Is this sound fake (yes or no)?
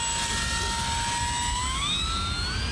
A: no